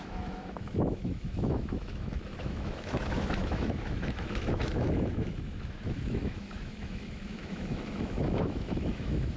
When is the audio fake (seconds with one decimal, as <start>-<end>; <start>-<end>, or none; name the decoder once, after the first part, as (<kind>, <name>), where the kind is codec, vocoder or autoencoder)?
0.0-9.4 (autoencoder, DAC-VAE)